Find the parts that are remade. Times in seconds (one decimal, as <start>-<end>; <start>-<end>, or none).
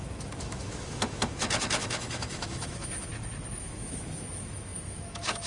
0.0-3.1; 3.6-5.5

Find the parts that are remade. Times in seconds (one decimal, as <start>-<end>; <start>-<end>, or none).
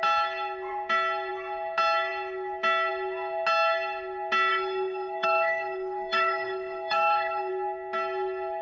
4.5-7.5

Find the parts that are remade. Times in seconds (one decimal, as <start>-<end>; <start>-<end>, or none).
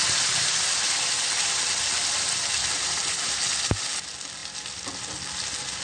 2.6-3.4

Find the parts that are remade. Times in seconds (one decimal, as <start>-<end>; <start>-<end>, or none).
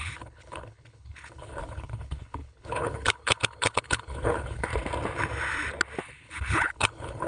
0.0-4.7; 6.0-7.3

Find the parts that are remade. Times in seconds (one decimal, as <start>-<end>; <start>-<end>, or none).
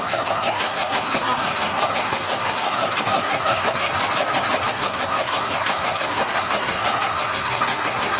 0.0-3.9; 4.7-8.2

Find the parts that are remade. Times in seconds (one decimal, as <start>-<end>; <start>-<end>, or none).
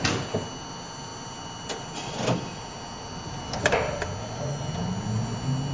none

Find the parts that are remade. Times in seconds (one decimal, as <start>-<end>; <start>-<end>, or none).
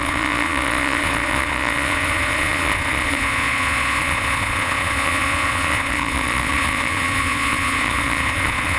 0.0-8.8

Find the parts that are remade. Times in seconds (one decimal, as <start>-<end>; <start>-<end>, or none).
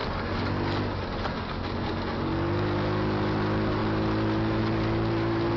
none